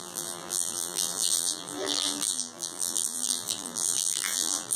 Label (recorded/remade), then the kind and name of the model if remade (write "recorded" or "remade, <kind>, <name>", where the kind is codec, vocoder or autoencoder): remade, vocoder, BigVGAN v2